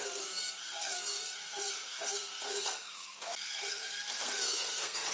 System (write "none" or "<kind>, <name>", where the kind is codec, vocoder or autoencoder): codec, SNAC